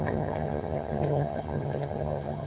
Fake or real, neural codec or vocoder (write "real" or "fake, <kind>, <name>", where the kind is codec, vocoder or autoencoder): fake, vocoder, HiFi-GAN